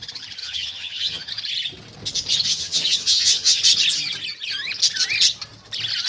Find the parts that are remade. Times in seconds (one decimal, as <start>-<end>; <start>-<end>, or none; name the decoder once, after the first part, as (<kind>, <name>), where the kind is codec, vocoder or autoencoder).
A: 0.4-1.3 (vocoder, HiFi-GAN); 2.5-3.6